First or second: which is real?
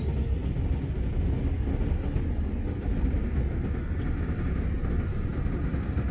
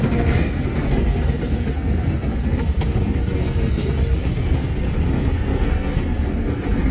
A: first